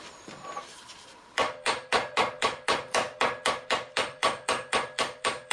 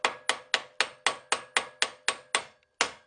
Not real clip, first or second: first